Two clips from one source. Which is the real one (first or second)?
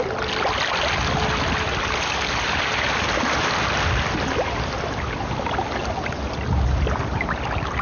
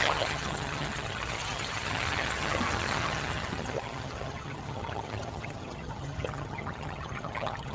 first